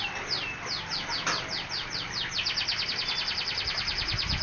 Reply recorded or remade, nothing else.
recorded